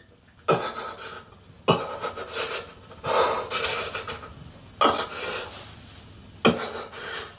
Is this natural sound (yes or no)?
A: yes